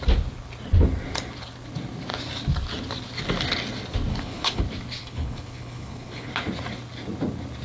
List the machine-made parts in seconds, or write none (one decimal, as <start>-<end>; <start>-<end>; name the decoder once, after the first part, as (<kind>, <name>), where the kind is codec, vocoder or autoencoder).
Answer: 4.1-4.6 (codec, HILCodec); 5.0-6.3